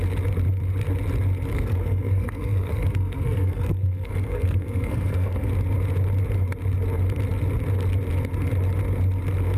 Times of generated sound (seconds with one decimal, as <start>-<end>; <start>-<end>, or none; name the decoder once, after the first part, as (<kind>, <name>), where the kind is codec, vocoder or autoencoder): 1.5-5.5 (codec, SNAC)